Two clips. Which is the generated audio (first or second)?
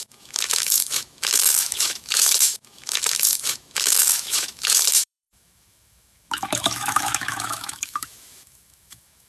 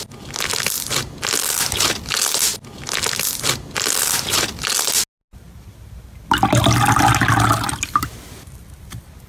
first